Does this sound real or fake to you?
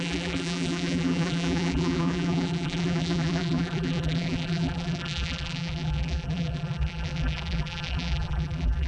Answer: fake